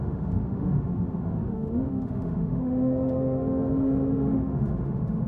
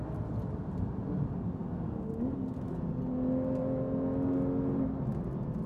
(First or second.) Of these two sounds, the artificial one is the first